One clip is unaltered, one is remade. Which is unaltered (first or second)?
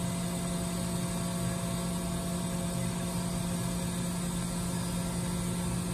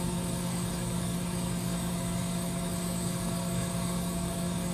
first